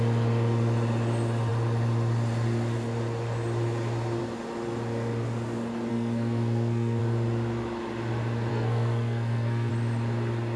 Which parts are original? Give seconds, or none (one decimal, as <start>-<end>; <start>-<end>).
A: 0.0-5.9; 7.0-8.5; 9.7-10.6